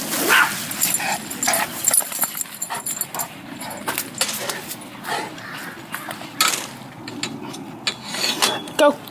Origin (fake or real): real